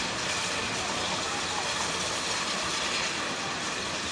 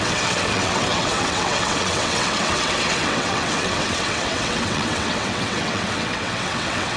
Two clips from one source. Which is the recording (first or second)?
first